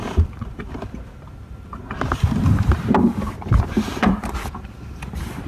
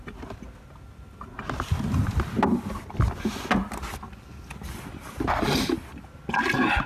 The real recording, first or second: second